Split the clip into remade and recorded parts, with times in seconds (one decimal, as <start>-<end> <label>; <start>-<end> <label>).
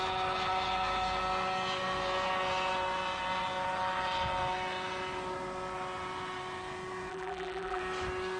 0.0-7.1 recorded; 7.1-7.8 remade; 7.8-8.4 recorded